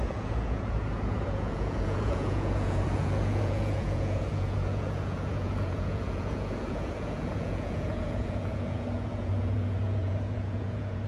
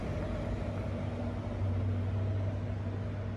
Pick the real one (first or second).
second